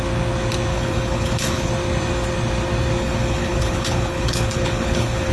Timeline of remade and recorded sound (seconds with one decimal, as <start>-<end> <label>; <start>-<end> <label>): 0.0-0.7 recorded; 0.7-1.7 remade; 1.7-3.0 recorded; 3.0-5.3 remade